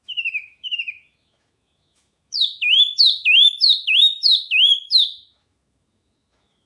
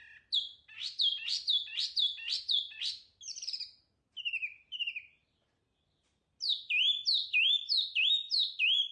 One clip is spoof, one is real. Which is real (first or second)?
second